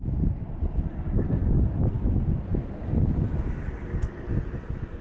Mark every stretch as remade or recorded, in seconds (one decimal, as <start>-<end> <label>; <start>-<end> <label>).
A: 0.0-5.0 recorded